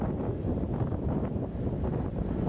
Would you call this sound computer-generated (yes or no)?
no